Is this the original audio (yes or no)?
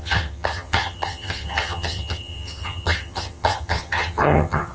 no